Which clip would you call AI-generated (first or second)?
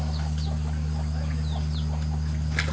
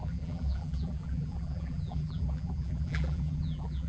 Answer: second